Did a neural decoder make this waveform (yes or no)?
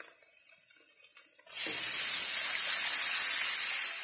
no